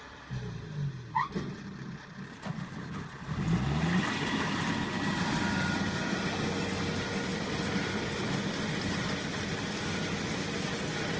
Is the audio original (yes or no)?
yes